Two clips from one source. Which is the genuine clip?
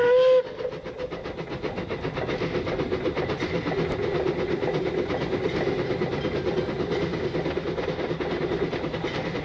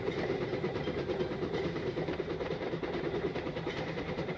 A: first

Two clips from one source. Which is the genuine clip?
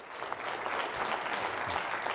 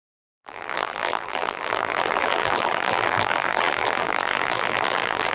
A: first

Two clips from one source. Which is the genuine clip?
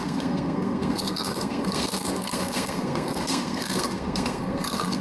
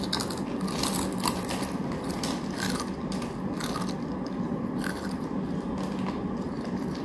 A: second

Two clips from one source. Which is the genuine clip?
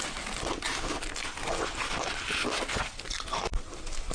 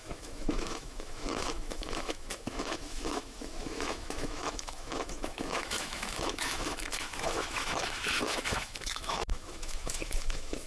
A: first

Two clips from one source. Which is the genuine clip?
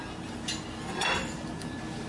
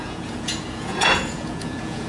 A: first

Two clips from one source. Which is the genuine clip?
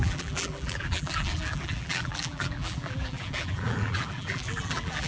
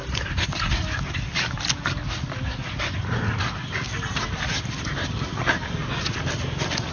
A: second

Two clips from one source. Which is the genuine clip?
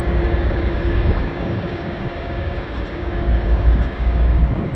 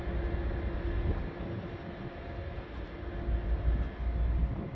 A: second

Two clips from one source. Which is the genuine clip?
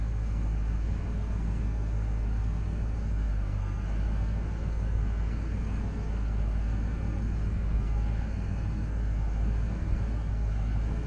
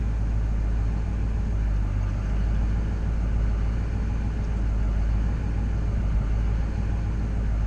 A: second